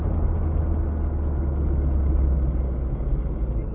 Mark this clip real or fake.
real